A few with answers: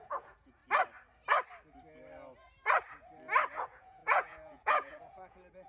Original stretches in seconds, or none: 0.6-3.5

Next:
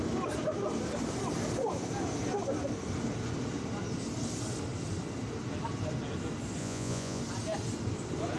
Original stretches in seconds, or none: 0.0-6.6; 7.2-8.4

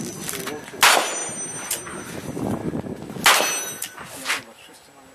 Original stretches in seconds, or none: 0.0-5.1

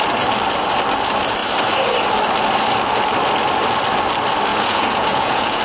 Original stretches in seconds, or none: 0.0-4.5